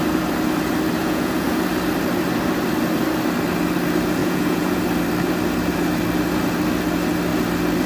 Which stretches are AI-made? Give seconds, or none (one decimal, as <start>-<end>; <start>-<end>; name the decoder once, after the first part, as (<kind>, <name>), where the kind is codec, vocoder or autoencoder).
1.0-1.7 (vocoder, Vocos); 4.2-4.8